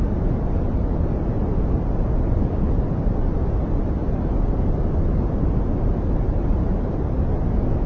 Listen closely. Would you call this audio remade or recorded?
recorded